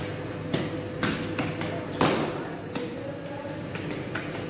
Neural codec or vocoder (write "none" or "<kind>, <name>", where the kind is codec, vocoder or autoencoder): none